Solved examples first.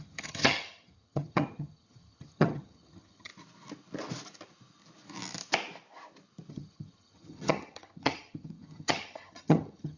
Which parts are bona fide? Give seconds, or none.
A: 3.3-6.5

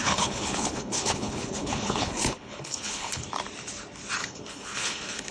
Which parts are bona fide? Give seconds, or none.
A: 3.2-4.2